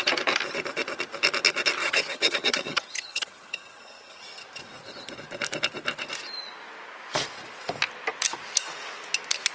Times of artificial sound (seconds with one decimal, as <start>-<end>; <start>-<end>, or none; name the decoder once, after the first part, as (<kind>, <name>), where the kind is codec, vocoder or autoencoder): 1.8-4.2 (vocoder, HiFi-GAN)